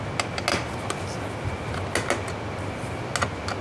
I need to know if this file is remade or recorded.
recorded